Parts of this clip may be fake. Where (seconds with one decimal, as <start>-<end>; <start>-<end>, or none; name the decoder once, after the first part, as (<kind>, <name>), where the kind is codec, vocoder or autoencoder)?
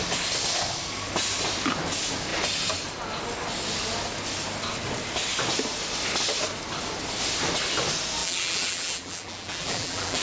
8.2-10.2 (vocoder, BigVGAN v2)